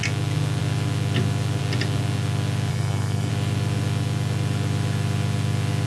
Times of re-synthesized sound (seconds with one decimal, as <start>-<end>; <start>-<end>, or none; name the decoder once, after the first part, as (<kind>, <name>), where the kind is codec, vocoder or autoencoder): 2.7-3.3 (codec, SNAC)